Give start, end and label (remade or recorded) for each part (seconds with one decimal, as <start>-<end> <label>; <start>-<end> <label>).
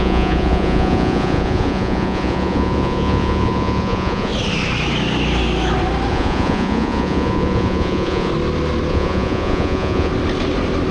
0.0-4.3 remade; 4.3-6.1 recorded; 6.1-8.3 remade; 8.3-8.9 recorded; 8.9-10.1 remade; 10.1-10.9 recorded